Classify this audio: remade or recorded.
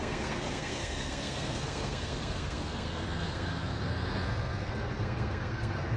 remade